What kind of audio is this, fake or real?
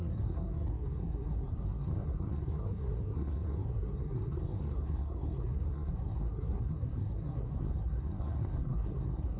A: fake